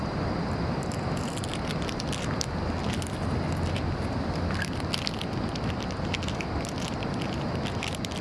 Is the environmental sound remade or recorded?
recorded